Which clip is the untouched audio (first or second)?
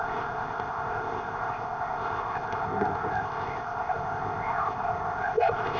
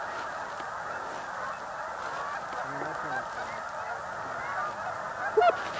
second